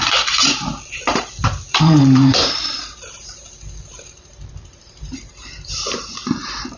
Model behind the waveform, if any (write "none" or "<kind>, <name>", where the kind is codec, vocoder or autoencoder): vocoder, BigVGAN v2